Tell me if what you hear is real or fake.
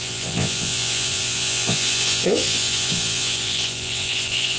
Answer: fake